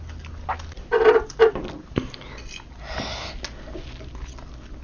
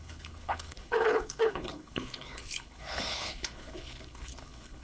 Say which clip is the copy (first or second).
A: second